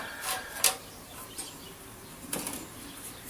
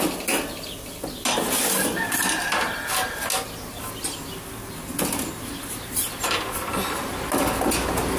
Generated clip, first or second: first